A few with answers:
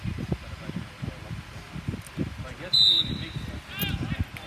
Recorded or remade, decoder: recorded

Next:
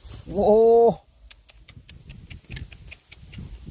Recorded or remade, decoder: recorded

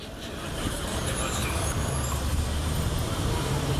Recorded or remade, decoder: remade, vocoder, BigVGAN v2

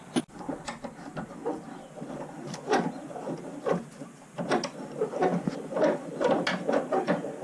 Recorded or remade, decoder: recorded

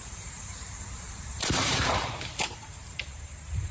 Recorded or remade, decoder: remade, vocoder, BigVGAN v2